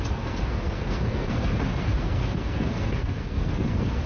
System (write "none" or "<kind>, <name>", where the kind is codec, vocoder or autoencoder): codec, SNAC